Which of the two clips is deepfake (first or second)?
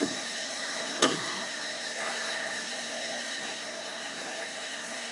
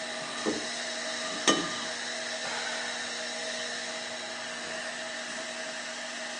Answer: first